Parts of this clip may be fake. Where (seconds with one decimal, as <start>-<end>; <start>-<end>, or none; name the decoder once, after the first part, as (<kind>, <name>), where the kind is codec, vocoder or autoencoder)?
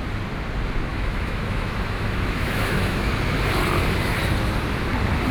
0.9-3.1 (autoencoder, DAC-VAE)